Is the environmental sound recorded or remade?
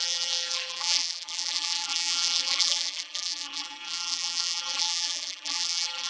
remade